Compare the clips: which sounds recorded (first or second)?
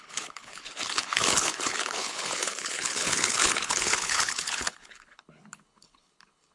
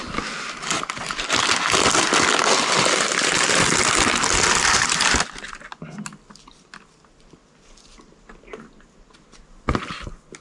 second